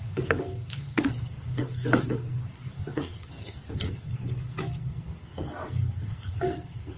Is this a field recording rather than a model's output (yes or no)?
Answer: no